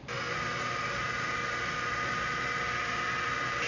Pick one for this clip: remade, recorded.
recorded